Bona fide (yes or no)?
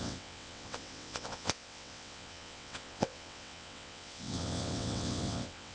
no